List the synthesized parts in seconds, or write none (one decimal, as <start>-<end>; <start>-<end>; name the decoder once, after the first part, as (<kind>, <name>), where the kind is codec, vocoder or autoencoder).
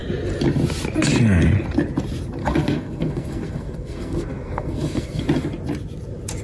2.4-5.2 (codec, SNAC)